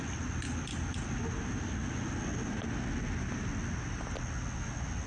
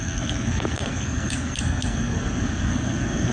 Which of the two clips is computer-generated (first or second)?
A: second